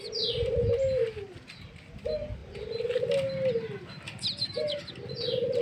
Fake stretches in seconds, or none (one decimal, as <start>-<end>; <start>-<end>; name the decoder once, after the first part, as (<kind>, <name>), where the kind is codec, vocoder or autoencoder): none